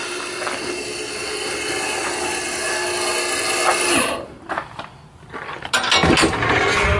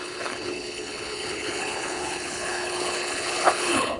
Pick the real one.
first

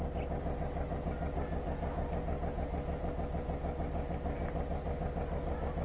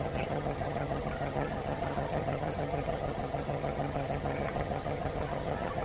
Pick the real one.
first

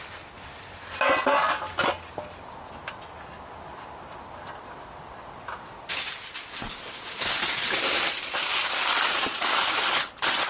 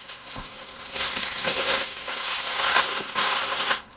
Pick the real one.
first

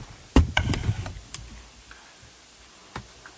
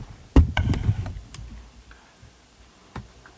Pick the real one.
first